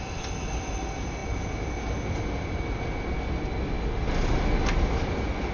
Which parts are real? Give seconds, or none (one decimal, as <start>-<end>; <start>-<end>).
0.0-5.5